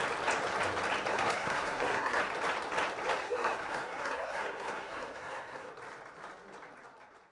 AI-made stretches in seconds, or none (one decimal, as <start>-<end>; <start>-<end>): 1.1-2.2; 3.2-5.7